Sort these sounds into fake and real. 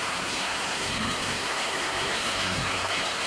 fake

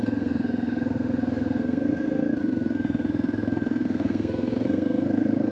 fake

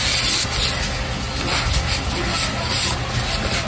real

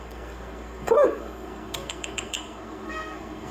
fake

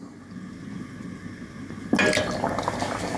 real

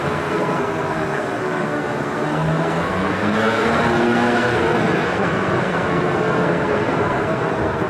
fake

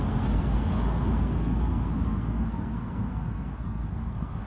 fake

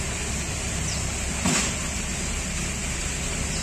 real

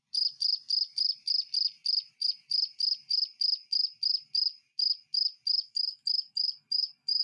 real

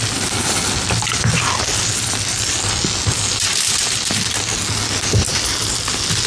real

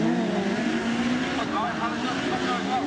real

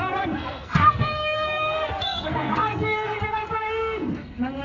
fake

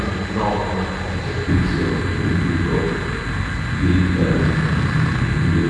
real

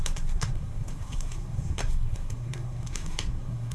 fake